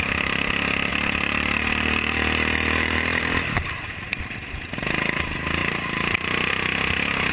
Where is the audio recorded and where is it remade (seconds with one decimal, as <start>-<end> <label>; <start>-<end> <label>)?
0.0-0.9 recorded; 0.9-4.2 remade; 4.2-5.6 recorded; 5.6-6.5 remade; 6.5-7.3 recorded